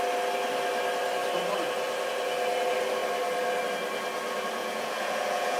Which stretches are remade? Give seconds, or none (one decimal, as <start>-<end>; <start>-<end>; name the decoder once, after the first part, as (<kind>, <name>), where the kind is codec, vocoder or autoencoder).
4.6-5.6 (vocoder, Vocos)